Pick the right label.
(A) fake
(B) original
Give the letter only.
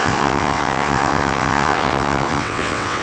A